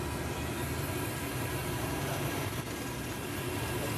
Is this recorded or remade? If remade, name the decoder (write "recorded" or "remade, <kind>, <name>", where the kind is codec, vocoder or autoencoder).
recorded